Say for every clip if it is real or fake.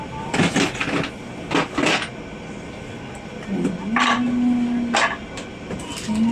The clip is real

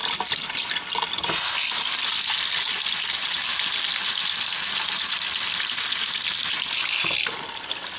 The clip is real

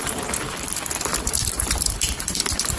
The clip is fake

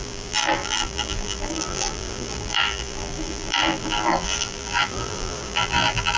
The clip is fake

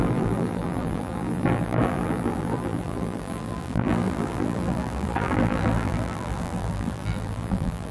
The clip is fake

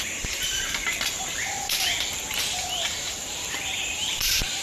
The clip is fake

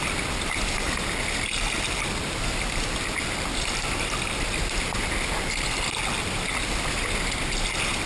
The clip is real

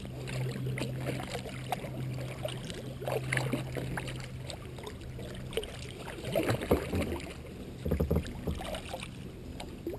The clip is real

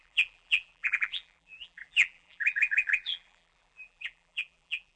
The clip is fake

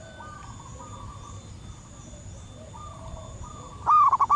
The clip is real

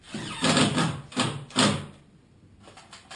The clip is real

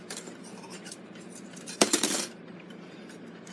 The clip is fake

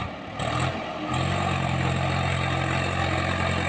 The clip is real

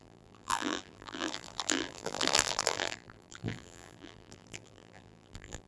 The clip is fake